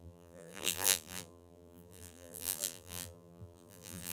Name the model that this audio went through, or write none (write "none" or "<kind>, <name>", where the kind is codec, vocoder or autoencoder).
vocoder, BigVGAN v2